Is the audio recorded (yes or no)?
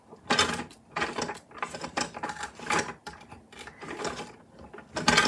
yes